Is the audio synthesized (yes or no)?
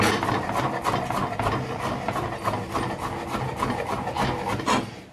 no